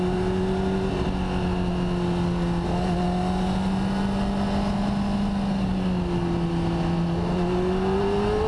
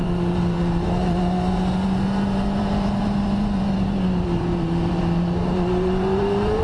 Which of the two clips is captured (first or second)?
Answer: first